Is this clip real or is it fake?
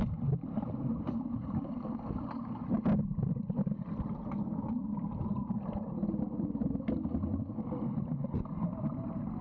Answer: real